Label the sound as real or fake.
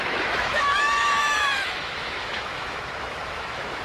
fake